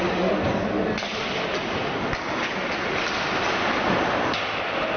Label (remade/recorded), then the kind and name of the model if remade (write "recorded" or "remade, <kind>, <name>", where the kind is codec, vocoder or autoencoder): recorded